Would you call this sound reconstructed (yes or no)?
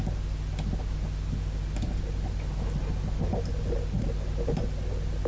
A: no